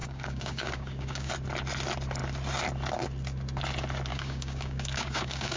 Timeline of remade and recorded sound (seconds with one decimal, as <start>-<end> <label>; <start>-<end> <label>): 0.0-1.3 remade; 1.3-4.1 recorded; 4.1-5.6 remade